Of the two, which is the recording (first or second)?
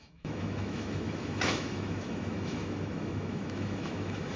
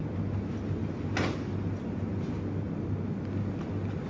second